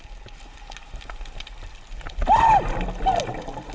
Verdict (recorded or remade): recorded